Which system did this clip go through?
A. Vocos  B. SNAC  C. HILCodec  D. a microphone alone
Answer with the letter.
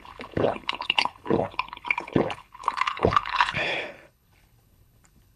C